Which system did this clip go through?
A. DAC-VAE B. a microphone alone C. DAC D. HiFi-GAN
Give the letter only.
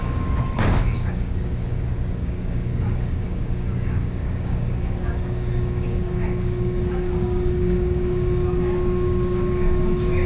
C